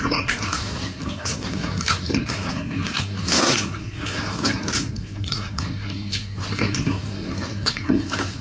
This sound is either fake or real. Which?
fake